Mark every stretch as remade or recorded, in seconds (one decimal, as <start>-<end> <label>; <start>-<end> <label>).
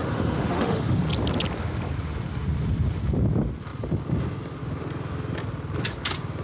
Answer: 0.0-1.0 remade; 1.0-6.4 recorded